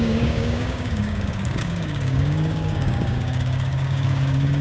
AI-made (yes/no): yes